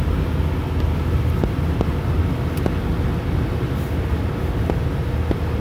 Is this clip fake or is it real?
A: real